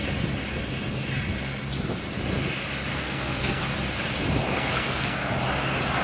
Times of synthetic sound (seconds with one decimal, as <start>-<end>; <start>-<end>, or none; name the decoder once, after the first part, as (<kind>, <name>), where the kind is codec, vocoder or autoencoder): 2.9-3.6 (codec, SNAC); 4.4-5.3